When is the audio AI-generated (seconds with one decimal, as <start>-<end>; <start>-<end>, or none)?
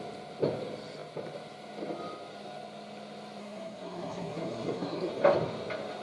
3.4-5.1